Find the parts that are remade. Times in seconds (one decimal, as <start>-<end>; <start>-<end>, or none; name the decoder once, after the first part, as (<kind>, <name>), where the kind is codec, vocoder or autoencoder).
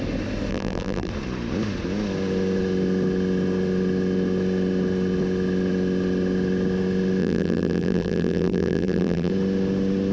0.5-1.1 (vocoder, BigVGAN v2); 7.2-9.3